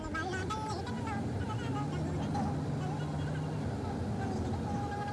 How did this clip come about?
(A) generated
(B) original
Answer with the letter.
B